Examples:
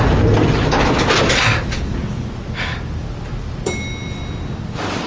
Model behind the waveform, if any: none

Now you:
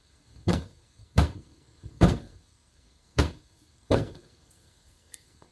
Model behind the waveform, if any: codec, SNAC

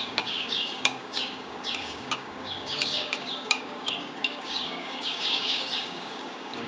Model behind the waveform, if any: codec, DAC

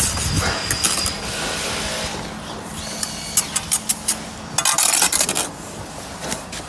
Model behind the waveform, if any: none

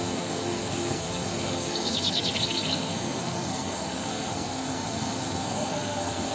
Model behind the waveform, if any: codec, SNAC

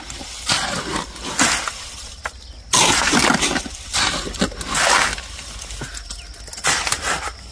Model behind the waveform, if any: none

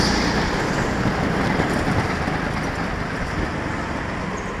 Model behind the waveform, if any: none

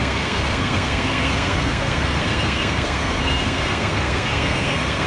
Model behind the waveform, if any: codec, SNAC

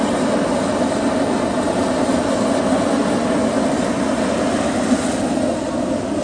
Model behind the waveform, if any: none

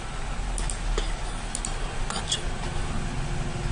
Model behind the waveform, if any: none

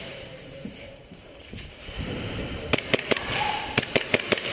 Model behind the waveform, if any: vocoder, BigVGAN v2